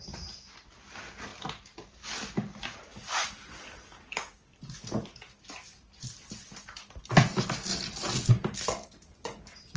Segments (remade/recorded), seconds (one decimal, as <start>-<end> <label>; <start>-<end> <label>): 0.0-9.8 recorded